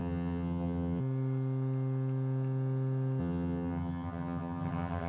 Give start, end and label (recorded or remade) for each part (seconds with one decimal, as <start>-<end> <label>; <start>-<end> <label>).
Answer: 0.0-1.0 remade; 1.0-3.2 recorded; 3.2-5.1 remade